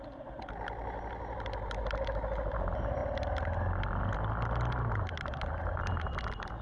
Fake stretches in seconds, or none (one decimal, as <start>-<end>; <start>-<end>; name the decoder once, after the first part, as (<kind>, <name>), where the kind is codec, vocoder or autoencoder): none